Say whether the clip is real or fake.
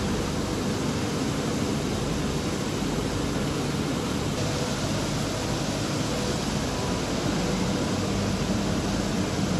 real